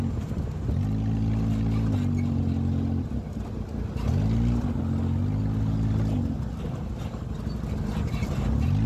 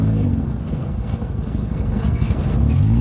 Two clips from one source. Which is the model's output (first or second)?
second